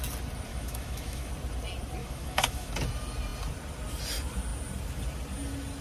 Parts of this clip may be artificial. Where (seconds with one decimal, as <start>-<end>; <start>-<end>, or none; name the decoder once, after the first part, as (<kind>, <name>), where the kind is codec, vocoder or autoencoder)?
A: 0.5-1.3 (autoencoder, DAC-VAE); 2.0-2.7